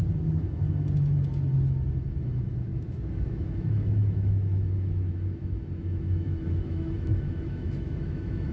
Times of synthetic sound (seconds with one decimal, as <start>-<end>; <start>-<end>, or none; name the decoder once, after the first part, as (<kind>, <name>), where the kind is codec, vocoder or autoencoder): 2.2-8.5 (autoencoder, DAC-VAE)